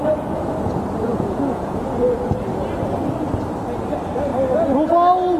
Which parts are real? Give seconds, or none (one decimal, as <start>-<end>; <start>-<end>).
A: 0.0-1.1; 1.8-5.4